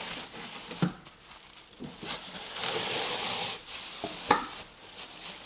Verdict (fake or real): real